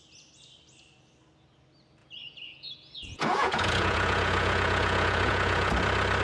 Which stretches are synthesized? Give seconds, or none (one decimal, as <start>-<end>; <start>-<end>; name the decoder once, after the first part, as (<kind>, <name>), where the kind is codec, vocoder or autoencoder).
2.0-5.7 (vocoder, Vocos)

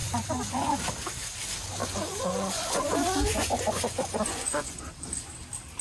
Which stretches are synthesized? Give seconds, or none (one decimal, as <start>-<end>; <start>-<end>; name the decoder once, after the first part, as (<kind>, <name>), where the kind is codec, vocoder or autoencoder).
0.0-0.8 (vocoder, Vocos); 1.8-4.8

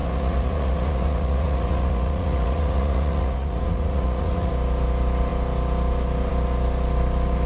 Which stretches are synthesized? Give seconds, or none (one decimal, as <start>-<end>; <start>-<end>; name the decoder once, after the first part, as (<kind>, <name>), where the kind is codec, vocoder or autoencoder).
0.0-4.5 (vocoder, Vocos)

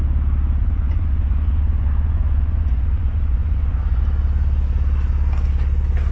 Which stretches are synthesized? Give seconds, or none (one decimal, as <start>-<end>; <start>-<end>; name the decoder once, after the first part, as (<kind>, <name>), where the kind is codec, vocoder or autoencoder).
0.6-4.0 (vocoder, Vocos)

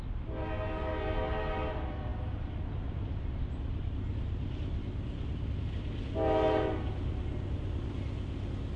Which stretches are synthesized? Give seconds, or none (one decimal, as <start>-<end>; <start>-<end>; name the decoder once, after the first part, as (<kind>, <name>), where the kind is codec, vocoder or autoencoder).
none